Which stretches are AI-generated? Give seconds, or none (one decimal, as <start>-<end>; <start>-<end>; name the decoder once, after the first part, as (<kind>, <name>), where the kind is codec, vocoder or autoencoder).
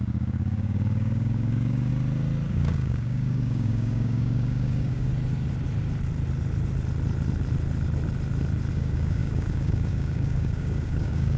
0.0-1.9 (codec, DAC); 2.5-5.1; 8.7-11.4